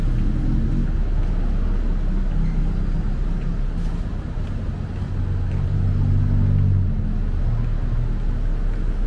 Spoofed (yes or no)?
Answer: no